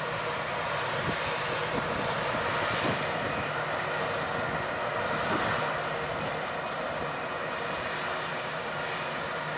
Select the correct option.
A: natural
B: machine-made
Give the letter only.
A